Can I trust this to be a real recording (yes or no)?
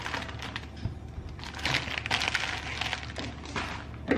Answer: yes